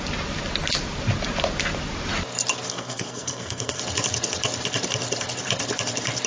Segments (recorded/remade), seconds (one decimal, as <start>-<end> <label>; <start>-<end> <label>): 0.0-2.7 recorded; 2.7-3.8 remade; 3.8-6.3 recorded